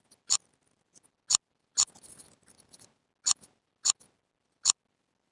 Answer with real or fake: real